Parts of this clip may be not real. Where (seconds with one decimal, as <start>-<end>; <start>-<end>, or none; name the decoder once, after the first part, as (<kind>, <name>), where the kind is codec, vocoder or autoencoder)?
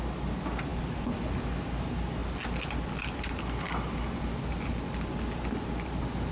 none